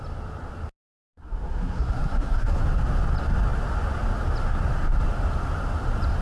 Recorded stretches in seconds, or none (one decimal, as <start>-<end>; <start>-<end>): 0.0-0.8; 2.6-6.2